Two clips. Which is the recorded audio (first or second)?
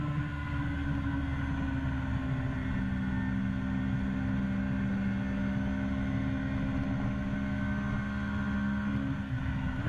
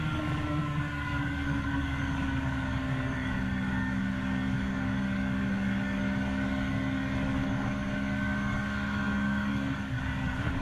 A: first